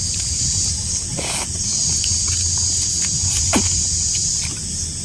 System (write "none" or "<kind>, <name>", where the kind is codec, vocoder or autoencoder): none